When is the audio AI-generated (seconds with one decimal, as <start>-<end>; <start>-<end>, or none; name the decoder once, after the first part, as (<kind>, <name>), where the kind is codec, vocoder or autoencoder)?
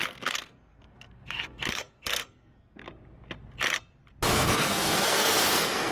0.0-2.8 (codec, SNAC); 4.3-5.9